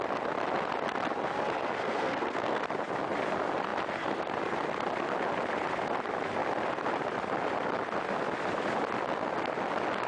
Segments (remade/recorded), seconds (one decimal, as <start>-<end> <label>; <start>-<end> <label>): 0.0-1.8 recorded; 1.8-2.6 remade; 2.6-10.1 recorded